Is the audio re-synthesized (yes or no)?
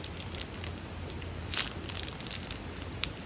no